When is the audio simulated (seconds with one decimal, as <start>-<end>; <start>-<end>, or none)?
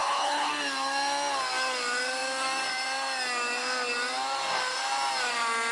0.0-0.5